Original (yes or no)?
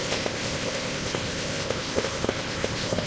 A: no